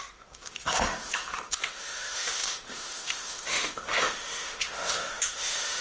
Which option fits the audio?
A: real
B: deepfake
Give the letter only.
B